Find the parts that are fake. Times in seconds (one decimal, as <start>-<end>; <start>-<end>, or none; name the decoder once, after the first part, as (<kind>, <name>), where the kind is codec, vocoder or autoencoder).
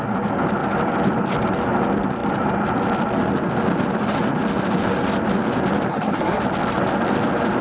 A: 5.9-6.4 (codec, SNAC)